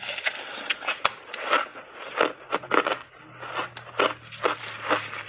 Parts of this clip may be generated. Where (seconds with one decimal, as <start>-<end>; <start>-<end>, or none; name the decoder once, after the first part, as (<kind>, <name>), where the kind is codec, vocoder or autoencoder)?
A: none